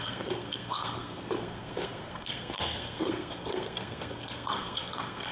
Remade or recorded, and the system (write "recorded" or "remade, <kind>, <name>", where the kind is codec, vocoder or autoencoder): remade, codec, SNAC